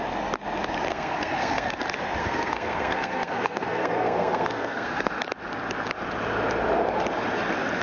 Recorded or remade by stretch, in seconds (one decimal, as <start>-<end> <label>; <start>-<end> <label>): 0.0-0.9 recorded; 0.9-1.8 remade; 1.8-2.2 recorded; 2.2-5.1 remade; 5.1-7.8 recorded